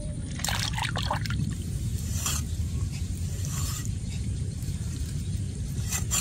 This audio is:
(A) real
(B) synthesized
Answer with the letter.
B